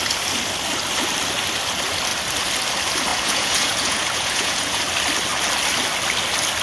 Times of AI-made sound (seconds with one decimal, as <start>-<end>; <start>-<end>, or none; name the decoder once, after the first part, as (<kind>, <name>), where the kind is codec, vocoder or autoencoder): 3.1-4.8 (vocoder, Vocos)